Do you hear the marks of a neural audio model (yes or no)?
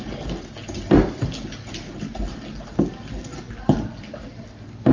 no